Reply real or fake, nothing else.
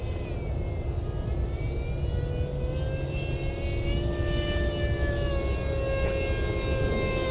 real